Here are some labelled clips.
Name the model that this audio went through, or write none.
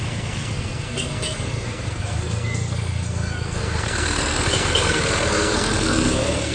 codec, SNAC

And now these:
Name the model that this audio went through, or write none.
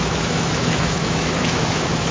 autoencoder, DAC-VAE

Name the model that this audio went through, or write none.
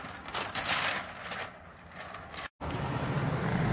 none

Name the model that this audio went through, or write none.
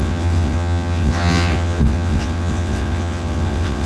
vocoder, WaveNeXt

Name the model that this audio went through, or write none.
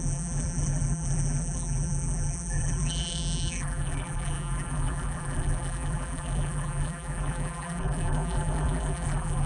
vocoder, BigVGAN v2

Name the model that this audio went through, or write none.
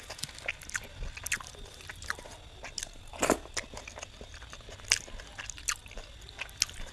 none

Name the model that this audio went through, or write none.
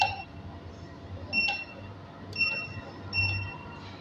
none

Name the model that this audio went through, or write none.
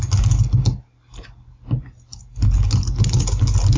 none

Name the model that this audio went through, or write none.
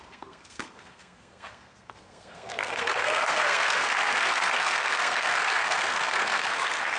codec, SNAC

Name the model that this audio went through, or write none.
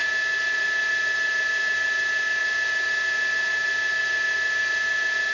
none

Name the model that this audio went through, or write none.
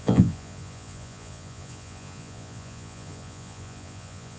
vocoder, Vocos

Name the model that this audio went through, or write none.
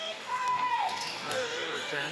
codec, DAC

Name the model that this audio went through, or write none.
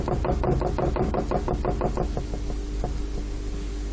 none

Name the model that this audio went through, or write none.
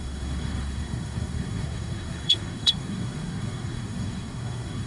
codec, SNAC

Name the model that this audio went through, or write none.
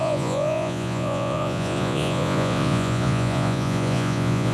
vocoder, Vocos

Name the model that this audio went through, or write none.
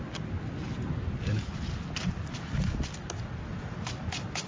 none